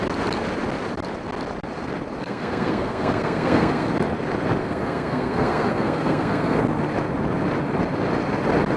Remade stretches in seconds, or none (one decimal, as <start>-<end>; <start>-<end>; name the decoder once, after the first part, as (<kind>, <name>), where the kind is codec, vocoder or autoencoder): 2.2-3.9 (codec, SNAC); 4.6-6.6